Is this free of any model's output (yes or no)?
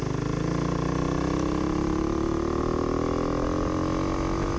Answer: yes